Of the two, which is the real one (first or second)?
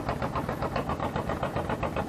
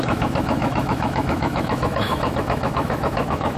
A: first